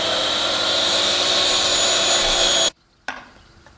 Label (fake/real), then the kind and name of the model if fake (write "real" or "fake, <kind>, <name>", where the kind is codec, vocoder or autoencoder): real